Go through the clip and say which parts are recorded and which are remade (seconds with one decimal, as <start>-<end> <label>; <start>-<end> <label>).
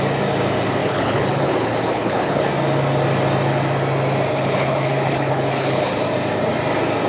0.0-0.8 recorded; 0.8-2.5 remade; 2.5-4.3 recorded; 4.3-6.0 remade; 6.0-7.1 recorded